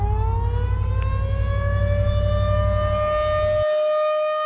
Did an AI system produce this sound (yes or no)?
no